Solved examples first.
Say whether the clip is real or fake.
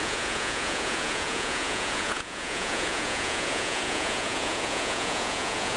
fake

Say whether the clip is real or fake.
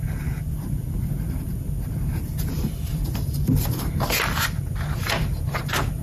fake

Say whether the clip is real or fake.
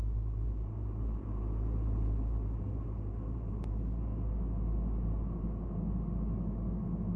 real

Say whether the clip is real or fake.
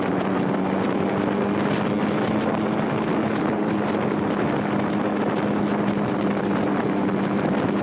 real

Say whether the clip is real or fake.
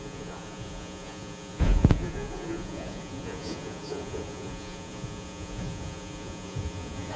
fake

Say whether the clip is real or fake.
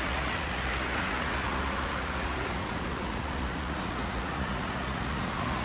fake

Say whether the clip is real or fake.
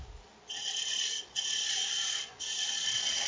real